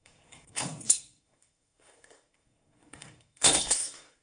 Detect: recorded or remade remade